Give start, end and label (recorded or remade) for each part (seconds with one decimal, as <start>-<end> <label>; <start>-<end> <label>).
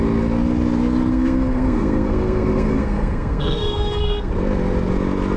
0.0-1.1 recorded; 1.1-4.3 remade; 4.3-5.4 recorded